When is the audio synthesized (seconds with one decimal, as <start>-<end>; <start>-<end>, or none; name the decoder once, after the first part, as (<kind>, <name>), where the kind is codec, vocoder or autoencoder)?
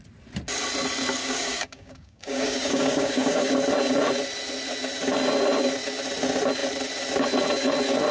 1.2-3.5 (codec, DAC)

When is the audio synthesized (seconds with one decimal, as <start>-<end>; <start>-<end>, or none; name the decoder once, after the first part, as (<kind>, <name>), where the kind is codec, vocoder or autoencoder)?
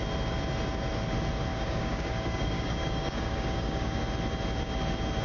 1.5-3.9 (codec, DAC)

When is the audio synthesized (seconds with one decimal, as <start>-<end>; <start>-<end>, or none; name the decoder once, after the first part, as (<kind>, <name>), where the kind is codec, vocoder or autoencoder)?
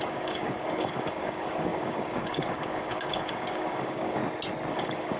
0.0-4.2 (codec, DAC); 4.7-5.2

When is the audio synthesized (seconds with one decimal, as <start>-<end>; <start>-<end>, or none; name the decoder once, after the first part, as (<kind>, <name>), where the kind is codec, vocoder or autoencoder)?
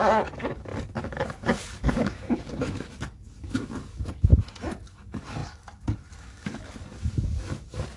0.0-4.3 (codec, DAC); 4.9-8.0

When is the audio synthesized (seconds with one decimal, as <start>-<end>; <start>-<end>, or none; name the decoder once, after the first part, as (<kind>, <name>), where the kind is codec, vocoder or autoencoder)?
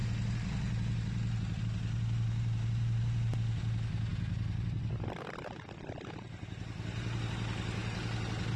none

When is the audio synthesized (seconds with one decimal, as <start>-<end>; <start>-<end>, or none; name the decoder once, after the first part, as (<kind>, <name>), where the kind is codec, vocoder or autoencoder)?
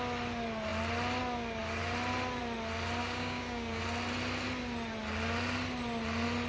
3.0-3.8 (codec, DAC)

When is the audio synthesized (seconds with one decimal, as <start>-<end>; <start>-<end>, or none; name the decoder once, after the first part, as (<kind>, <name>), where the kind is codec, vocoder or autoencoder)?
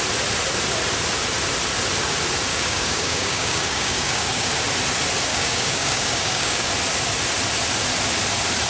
2.5-4.5 (codec, DAC); 5.3-6.7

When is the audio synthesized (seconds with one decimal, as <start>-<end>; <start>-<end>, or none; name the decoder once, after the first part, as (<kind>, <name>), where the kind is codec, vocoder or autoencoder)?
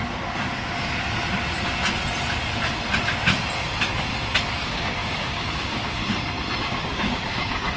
4.5-6.0 (codec, DAC); 6.6-7.8